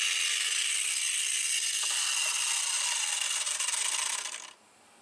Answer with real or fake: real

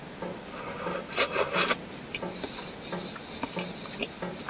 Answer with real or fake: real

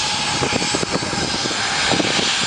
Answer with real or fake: real